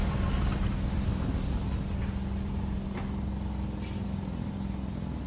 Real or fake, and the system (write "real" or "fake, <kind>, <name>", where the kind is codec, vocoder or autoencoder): real